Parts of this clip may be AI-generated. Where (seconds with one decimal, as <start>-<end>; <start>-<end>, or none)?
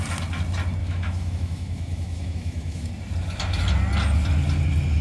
0.8-2.9